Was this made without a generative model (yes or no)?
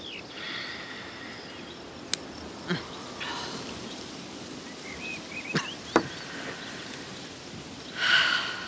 yes